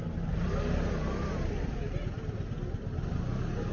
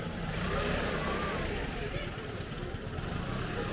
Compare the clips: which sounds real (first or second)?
first